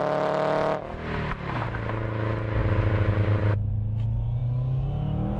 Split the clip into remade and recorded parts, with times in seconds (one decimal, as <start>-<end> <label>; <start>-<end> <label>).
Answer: 0.0-5.4 recorded

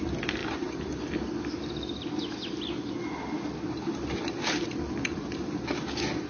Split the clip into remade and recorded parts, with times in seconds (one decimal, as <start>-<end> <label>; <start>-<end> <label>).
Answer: 0.0-0.4 recorded; 0.4-1.1 remade; 1.1-6.3 recorded

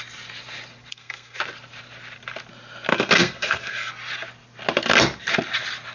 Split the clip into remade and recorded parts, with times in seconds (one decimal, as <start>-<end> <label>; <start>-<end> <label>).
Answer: 0.0-0.9 recorded; 0.9-1.4 remade; 1.4-2.9 recorded; 2.9-3.9 remade; 3.9-5.9 recorded

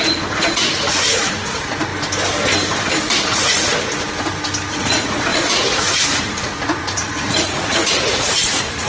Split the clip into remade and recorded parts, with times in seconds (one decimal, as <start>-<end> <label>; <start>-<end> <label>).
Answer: 0.0-1.9 remade; 1.9-3.2 recorded; 3.2-3.7 remade; 3.7-4.7 recorded; 4.7-8.9 remade